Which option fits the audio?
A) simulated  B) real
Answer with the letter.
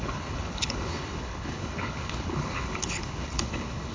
A